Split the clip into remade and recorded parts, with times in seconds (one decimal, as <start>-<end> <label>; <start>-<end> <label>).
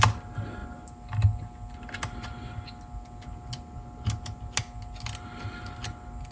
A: 0.0-6.3 recorded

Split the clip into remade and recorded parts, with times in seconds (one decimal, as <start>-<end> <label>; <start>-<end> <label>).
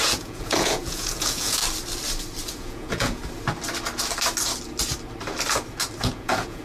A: 0.0-1.6 remade; 1.6-2.5 recorded; 2.5-3.2 remade; 3.2-6.0 recorded; 6.0-6.6 remade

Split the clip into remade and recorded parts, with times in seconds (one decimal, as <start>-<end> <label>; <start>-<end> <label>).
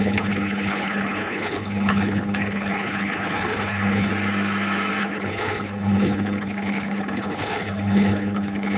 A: 0.0-4.1 remade; 4.1-5.0 recorded; 5.0-8.8 remade